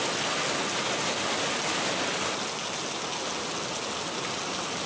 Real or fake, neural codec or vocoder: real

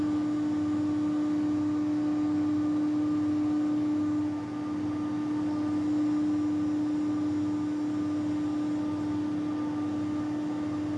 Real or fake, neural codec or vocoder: real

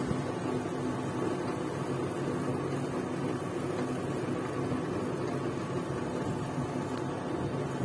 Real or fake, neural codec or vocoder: real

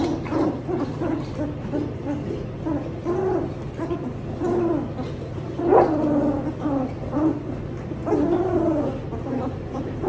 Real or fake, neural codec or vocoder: real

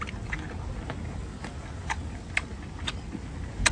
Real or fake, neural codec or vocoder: real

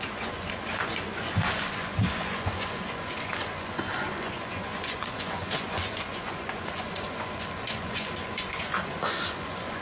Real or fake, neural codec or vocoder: fake, vocoder, Vocos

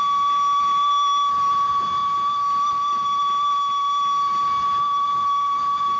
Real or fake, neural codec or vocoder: real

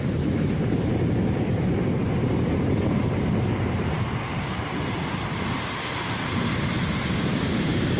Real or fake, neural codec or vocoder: fake, vocoder, BigVGAN v2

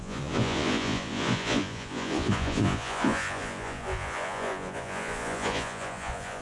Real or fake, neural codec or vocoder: fake, vocoder, Vocos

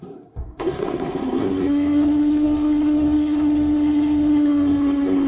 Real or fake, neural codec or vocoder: fake, codec, SNAC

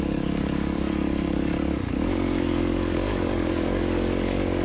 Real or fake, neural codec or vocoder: fake, codec, DAC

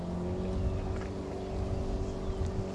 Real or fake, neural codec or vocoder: real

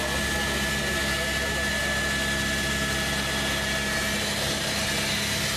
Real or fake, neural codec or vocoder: real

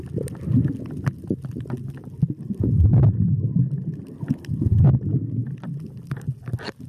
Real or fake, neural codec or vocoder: real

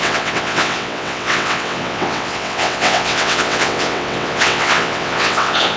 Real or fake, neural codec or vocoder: fake, vocoder, WaveNeXt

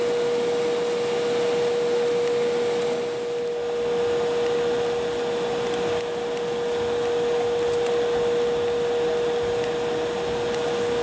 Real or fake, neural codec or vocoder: real